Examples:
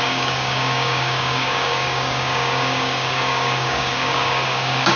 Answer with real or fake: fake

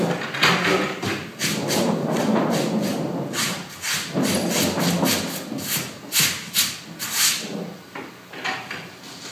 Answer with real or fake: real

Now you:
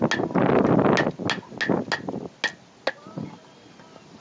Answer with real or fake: real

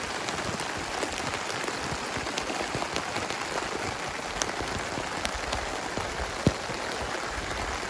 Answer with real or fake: real